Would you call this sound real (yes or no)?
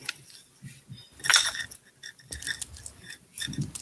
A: yes